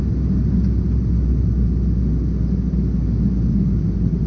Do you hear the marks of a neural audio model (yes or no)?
no